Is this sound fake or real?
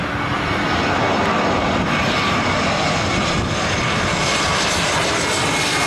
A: real